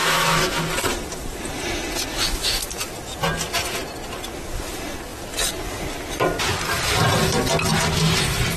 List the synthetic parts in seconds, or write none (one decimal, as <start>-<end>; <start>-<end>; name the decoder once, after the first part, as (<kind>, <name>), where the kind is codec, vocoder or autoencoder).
0.0-0.6 (autoencoder, DAC-VAE); 2.1-2.7